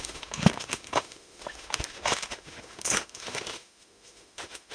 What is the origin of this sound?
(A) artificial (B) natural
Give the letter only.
A